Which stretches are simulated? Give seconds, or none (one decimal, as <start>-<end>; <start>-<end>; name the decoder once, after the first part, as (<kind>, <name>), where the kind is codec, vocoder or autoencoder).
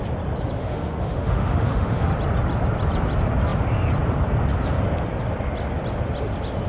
0.6-2.1 (autoencoder, DAC-VAE)